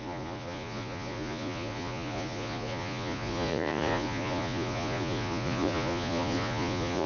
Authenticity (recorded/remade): remade